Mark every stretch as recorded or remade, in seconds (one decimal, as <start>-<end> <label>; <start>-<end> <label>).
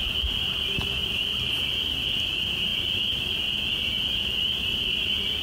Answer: 0.0-1.0 recorded; 1.0-1.7 remade; 1.7-3.9 recorded; 3.9-5.4 remade